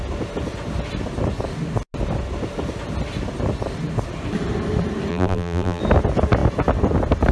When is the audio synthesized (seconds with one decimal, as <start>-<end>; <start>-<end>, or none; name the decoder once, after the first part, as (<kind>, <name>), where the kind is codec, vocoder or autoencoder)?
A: 5.1-5.8 (vocoder, BigVGAN v2)